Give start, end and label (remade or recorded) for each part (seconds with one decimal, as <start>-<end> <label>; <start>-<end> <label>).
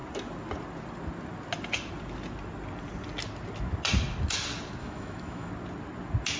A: 0.0-4.8 recorded; 4.8-5.5 remade; 5.5-6.4 recorded